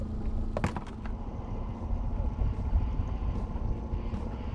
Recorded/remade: recorded